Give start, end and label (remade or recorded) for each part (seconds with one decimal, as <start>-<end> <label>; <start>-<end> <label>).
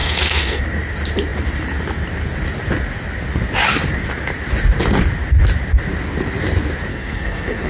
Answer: 0.0-0.6 remade; 0.6-6.9 recorded; 6.9-7.7 remade